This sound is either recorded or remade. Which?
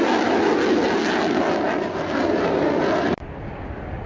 recorded